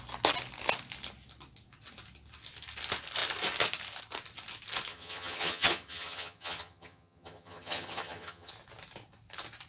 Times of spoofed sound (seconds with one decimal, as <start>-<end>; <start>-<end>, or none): 4.9-8.5